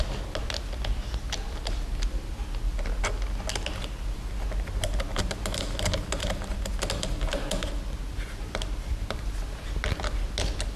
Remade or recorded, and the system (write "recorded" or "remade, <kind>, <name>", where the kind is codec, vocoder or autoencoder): recorded